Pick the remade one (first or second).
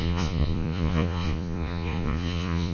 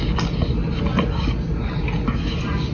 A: first